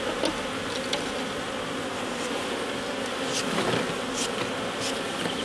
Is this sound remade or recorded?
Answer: recorded